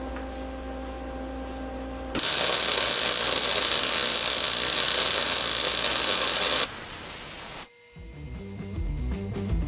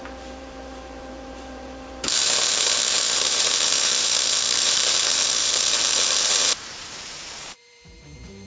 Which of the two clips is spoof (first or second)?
second